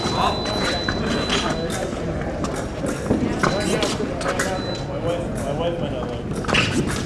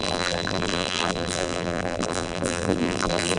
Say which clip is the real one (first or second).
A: first